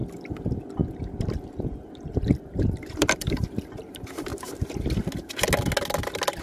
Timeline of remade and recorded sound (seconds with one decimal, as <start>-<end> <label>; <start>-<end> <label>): 0.0-2.4 recorded; 2.4-4.3 remade; 4.3-6.4 recorded